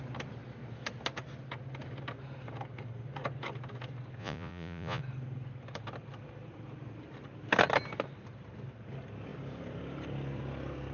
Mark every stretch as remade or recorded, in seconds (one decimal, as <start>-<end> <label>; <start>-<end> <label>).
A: 0.0-4.2 recorded; 4.2-5.0 remade; 5.0-10.9 recorded